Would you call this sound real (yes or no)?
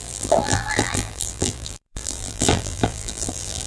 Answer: no